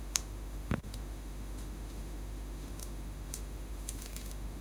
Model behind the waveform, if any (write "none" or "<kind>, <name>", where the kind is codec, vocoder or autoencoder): autoencoder, DAC-VAE